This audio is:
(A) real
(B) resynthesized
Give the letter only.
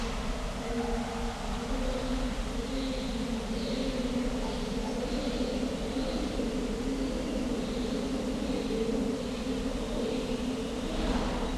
A